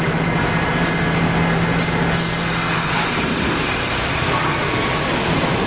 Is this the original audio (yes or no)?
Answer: yes